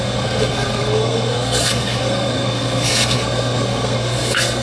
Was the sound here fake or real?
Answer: fake